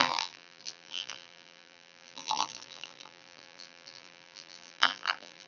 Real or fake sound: fake